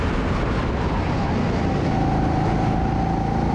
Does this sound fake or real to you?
real